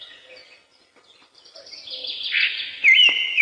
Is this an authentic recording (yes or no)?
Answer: yes